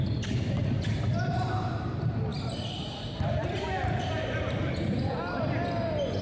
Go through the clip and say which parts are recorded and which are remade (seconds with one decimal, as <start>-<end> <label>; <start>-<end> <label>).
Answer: 0.0-2.3 recorded; 2.3-3.6 remade; 3.6-6.2 recorded